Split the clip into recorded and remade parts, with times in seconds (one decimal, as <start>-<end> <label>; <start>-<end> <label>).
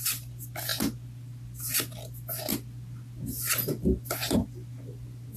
0.0-5.4 recorded